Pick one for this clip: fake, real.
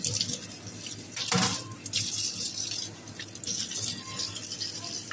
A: real